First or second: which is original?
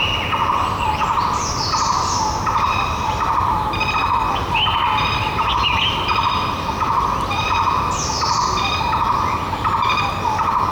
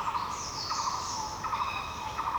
first